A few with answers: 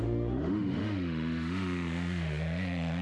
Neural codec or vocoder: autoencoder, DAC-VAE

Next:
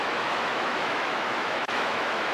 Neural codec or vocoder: autoencoder, DAC-VAE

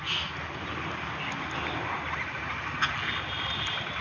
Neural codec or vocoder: none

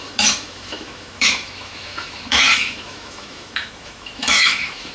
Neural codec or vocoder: autoencoder, DAC-VAE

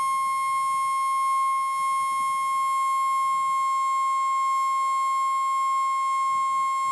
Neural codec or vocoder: none